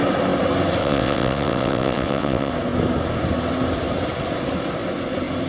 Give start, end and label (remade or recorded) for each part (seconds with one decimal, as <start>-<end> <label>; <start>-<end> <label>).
0.0-0.8 recorded; 0.8-2.5 remade; 2.5-5.5 recorded